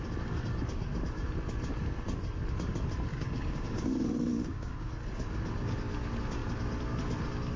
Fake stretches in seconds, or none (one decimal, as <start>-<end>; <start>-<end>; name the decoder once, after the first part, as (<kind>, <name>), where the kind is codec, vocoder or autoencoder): 3.1-3.9 (codec, DAC); 4.3-4.9

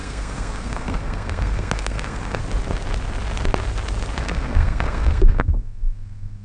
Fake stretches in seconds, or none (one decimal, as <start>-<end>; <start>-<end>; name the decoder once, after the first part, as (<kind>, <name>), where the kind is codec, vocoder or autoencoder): 0.0-2.4 (codec, SNAC); 4.2-6.4

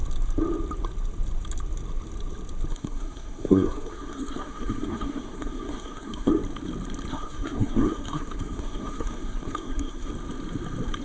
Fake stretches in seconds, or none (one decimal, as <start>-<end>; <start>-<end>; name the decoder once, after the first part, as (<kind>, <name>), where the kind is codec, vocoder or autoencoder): 2.7-6.3 (codec, SNAC); 7.1-10.1

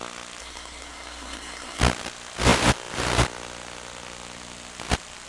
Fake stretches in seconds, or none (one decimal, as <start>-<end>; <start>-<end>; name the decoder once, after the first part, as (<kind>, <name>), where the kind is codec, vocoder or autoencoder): 0.4-1.8 (codec, SNAC)

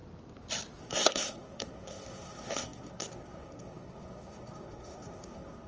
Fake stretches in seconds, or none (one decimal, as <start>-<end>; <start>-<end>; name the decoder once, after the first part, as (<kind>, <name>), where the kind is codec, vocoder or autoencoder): 0.8-5.7 (codec, SNAC)

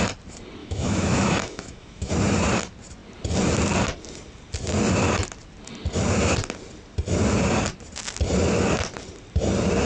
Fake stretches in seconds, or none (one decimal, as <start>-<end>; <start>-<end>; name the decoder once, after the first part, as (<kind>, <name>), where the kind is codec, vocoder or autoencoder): 0.6-2.1 (autoencoder, DAC-VAE)

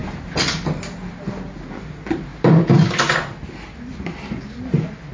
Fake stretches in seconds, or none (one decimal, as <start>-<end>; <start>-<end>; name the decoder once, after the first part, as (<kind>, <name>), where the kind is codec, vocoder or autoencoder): none

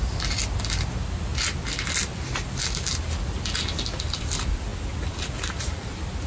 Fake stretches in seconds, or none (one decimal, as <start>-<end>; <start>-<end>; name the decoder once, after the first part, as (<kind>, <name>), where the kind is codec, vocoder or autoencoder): none